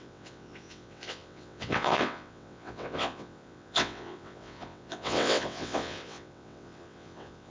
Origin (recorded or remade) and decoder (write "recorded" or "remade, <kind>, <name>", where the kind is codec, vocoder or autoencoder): remade, vocoder, WaveNeXt